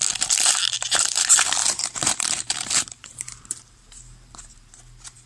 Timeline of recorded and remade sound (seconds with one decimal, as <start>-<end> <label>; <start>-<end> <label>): 0.0-1.6 recorded; 1.6-3.9 remade; 3.9-5.3 recorded